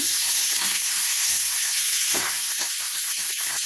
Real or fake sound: fake